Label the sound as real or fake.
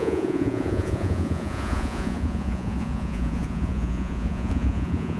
fake